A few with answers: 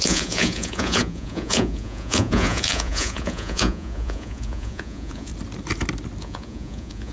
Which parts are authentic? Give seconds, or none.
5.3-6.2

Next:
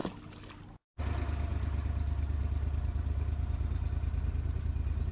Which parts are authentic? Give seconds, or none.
0.0-5.1

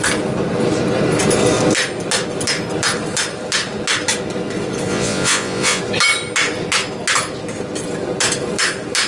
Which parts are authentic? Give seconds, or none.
0.0-4.9; 5.8-9.1

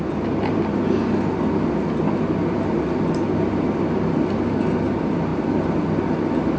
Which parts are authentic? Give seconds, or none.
0.0-6.6

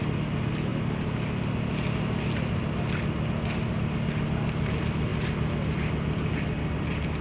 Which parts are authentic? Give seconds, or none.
0.0-7.2